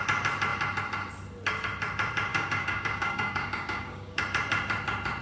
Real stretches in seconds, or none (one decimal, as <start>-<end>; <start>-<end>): 0.0-2.3; 4.2-5.2